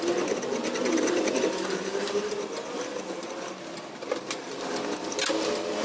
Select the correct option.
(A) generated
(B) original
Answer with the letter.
B